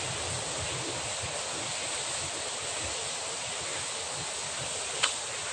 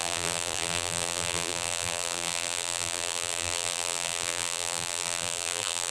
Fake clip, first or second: second